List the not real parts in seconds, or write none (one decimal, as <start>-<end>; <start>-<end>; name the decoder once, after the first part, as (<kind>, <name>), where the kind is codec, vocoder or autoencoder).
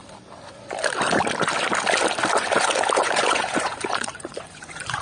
3.0-5.0 (vocoder, Vocos)